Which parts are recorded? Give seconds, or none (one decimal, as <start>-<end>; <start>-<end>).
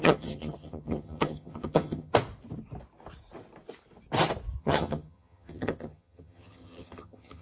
2.1-4.6